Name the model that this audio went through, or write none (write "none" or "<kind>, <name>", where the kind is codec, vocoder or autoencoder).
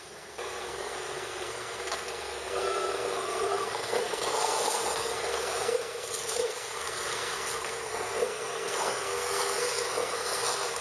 codec, SNAC